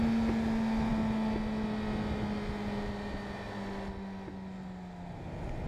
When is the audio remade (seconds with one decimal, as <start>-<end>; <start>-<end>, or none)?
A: none

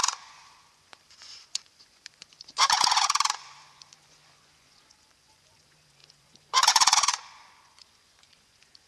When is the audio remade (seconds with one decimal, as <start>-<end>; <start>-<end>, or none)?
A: 0.0-8.9

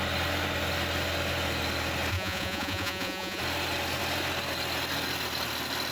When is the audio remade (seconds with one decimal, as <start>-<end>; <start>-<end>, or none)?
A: 2.1-3.4

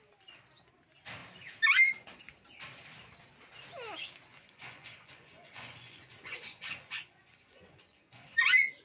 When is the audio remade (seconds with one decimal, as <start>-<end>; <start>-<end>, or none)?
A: 4.3-8.4

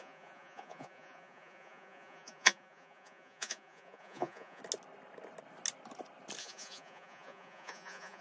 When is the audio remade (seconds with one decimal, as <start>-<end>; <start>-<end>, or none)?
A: 0.0-4.6; 6.4-8.2

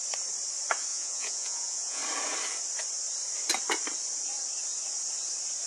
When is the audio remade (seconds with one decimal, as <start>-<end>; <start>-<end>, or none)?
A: 0.9-2.0

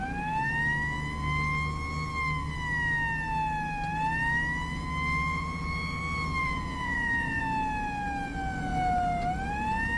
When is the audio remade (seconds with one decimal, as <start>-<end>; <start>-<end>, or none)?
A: 5.3-6.0; 6.4-7.4